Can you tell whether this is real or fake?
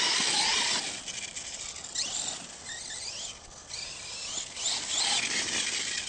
real